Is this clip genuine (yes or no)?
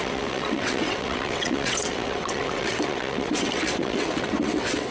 no